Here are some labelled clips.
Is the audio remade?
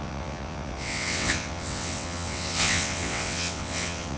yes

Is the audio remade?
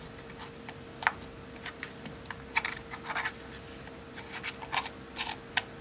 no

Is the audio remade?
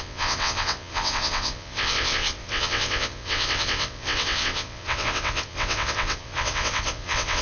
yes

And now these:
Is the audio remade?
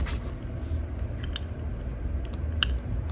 no